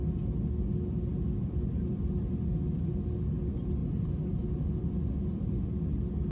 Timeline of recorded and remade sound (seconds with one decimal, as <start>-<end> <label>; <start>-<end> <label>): 0.0-3.8 recorded; 3.8-5.6 remade; 5.6-6.3 recorded

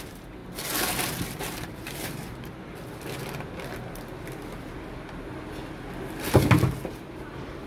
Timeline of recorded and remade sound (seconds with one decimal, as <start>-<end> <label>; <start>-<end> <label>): 0.0-0.4 remade; 0.4-1.4 recorded; 1.4-2.3 remade; 2.3-6.9 recorded; 6.9-7.7 remade

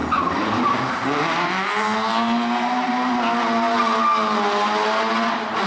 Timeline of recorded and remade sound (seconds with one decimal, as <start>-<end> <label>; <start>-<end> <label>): 0.0-2.9 remade; 2.9-5.7 recorded

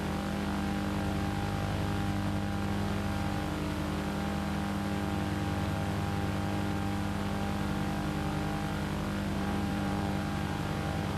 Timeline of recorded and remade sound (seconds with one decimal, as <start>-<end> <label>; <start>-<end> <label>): 0.0-9.3 recorded; 9.3-11.2 remade